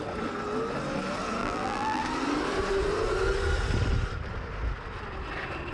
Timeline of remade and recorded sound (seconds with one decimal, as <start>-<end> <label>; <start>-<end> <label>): 0.0-1.4 recorded; 1.4-2.0 remade; 2.0-5.7 recorded